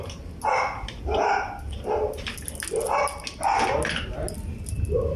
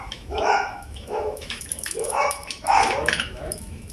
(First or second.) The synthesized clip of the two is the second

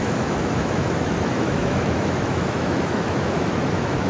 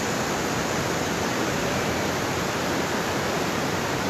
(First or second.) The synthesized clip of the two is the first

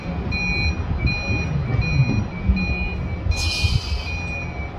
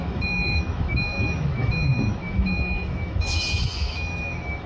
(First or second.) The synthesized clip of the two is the second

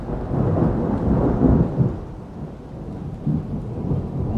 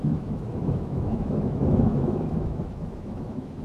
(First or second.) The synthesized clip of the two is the second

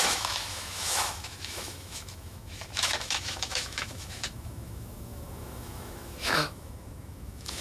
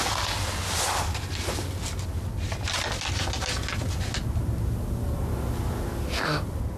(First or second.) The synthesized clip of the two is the first